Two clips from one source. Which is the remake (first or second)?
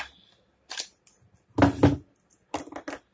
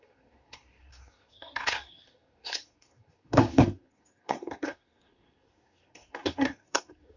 second